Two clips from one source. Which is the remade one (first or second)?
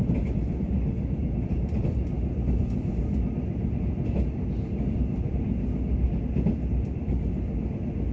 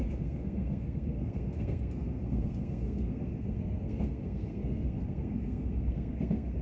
second